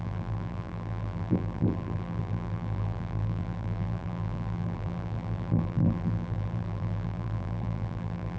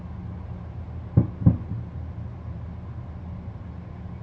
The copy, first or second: first